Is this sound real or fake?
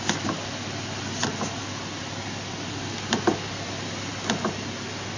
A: real